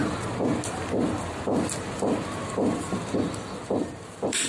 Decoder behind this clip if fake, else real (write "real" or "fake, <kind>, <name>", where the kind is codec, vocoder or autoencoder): real